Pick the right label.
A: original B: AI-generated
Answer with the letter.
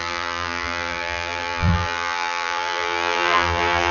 B